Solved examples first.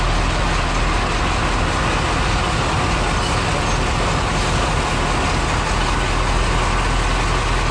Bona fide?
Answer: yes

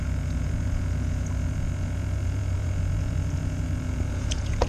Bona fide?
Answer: no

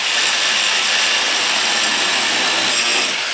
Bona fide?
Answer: yes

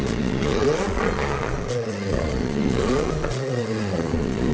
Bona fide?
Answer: no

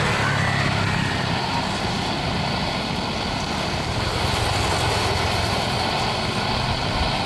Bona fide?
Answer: yes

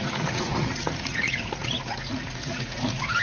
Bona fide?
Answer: no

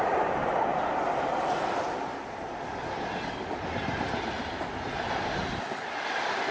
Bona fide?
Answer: yes